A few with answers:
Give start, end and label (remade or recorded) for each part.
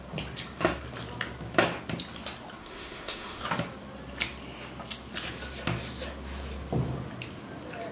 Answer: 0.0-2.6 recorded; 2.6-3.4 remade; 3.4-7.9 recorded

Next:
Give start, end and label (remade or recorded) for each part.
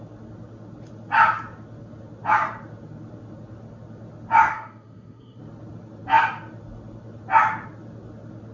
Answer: 0.0-4.5 recorded; 4.5-5.4 remade; 5.4-8.5 recorded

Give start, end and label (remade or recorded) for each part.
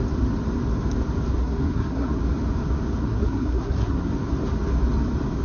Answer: 0.0-1.4 recorded; 1.4-2.2 remade; 2.2-3.0 recorded; 3.0-4.1 remade; 4.1-5.4 recorded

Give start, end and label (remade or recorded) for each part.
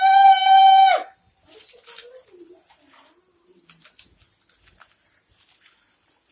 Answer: 0.0-6.3 recorded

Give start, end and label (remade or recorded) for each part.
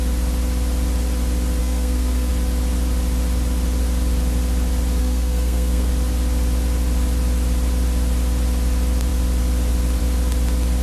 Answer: 0.0-1.6 recorded; 1.6-2.3 remade; 2.3-5.0 recorded; 5.0-5.9 remade; 5.9-10.8 recorded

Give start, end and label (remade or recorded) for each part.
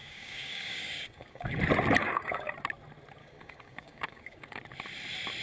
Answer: 0.0-1.6 remade; 1.6-2.0 recorded; 2.0-2.5 remade; 2.5-3.2 recorded; 3.2-4.6 remade; 4.6-5.4 recorded